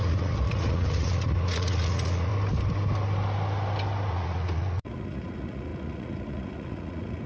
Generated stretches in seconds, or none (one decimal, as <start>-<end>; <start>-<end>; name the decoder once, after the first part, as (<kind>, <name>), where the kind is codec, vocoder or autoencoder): 0.0-2.3 (vocoder, Vocos); 4.1-7.3